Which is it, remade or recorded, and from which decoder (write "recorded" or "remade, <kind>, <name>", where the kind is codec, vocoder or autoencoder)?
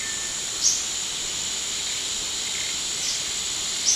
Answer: recorded